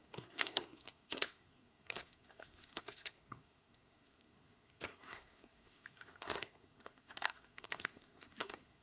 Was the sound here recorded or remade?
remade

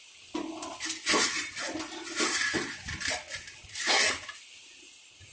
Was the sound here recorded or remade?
recorded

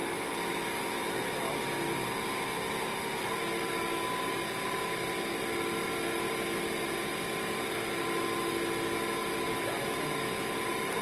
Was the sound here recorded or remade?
recorded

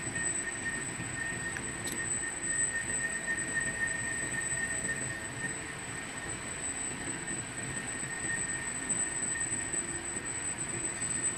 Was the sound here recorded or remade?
recorded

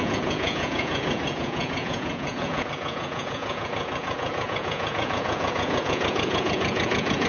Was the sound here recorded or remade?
remade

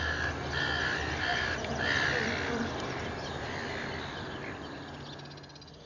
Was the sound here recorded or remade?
recorded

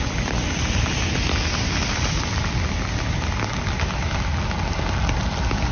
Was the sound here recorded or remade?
recorded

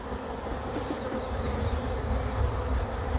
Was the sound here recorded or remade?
recorded